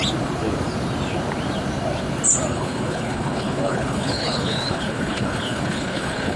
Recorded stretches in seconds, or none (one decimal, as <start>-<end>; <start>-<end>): 0.0-2.5

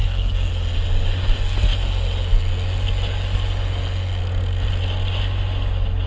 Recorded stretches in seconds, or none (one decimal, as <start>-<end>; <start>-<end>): 0.5-6.1

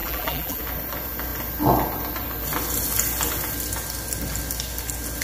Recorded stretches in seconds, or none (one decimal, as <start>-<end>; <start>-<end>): 0.6-5.2

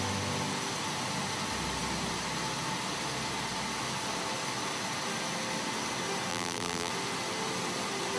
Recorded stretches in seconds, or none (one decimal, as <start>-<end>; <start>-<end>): 0.0-6.3; 6.9-8.2

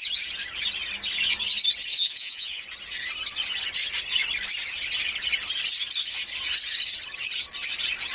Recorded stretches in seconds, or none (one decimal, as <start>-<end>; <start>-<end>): 0.0-1.9; 2.6-8.1

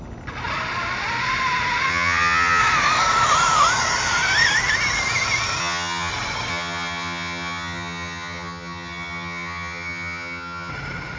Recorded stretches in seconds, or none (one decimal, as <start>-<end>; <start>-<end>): 0.0-1.9; 2.6-5.6; 6.1-6.5; 10.7-11.2

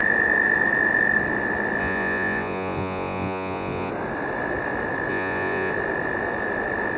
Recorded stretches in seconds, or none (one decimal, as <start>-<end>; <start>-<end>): 0.0-1.8; 3.9-5.1; 5.7-7.0